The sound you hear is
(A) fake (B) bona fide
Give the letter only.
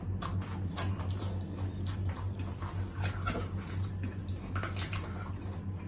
B